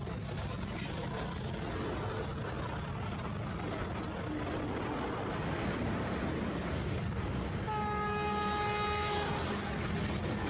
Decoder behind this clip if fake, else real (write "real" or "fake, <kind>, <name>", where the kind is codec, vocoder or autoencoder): real